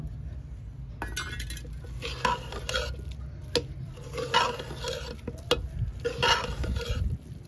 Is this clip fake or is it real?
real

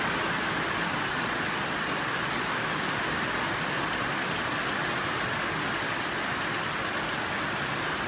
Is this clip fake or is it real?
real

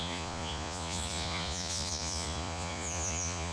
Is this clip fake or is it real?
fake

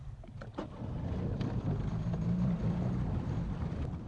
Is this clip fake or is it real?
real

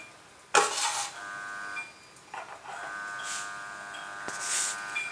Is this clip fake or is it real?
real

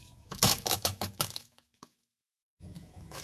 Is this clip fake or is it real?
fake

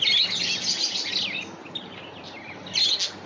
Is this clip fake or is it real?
real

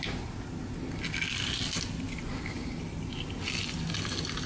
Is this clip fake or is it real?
real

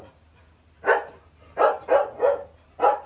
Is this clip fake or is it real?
real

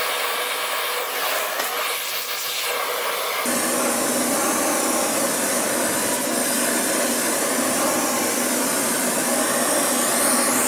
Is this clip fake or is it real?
real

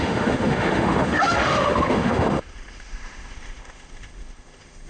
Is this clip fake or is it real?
fake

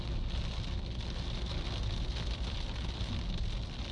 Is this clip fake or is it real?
real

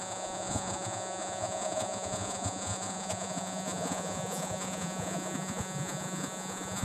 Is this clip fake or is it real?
fake